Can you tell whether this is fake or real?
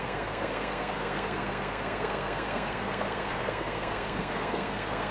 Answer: fake